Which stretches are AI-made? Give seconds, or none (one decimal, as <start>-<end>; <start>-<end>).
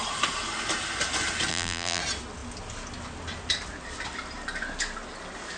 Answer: 1.5-2.0